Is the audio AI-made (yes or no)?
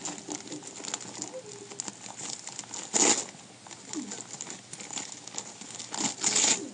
no